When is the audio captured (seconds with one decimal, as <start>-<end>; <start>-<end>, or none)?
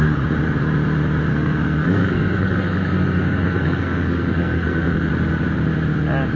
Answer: 0.0-1.3; 5.1-6.4